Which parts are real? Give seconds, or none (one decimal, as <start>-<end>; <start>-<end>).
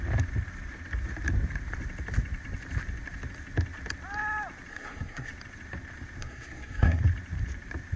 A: 0.0-4.7; 5.3-6.2; 7.0-8.0